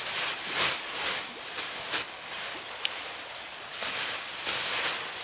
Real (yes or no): yes